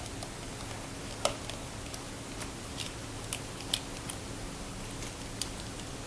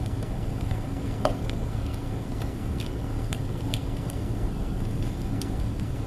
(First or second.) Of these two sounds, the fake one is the second